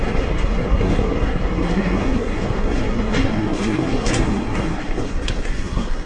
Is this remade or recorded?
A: remade